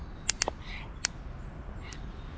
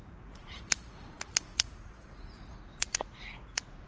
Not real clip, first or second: second